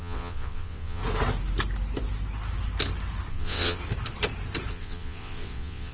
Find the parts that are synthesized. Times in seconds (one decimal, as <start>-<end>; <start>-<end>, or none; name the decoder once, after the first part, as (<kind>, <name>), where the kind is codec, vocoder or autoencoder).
0.0-1.0 (vocoder, WaveNeXt); 3.3-3.8; 4.7-5.9